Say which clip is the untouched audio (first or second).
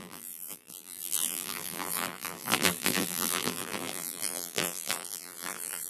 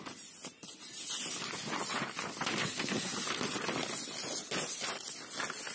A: second